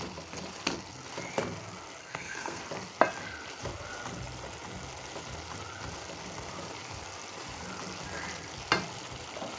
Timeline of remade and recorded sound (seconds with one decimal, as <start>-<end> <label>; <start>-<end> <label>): 0.0-2.0 recorded; 2.0-2.6 remade; 2.6-9.6 recorded